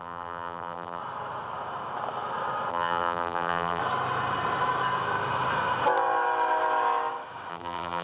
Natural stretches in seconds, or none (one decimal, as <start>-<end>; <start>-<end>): 1.0-2.7; 3.8-7.5